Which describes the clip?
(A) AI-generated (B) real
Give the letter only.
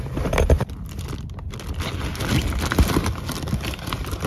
B